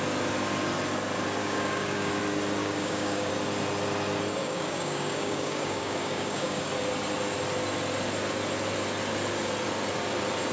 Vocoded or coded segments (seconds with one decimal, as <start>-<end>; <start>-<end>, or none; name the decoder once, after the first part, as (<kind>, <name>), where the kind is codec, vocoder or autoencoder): 1.4-2.1 (codec, DAC); 2.6-3.3; 4.4-6.7